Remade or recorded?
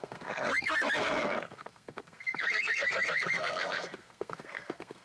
remade